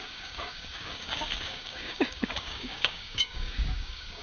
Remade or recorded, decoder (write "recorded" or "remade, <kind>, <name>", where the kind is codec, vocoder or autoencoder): remade, codec, DAC